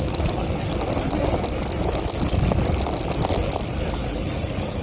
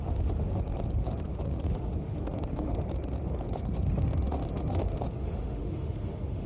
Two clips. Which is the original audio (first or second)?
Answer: first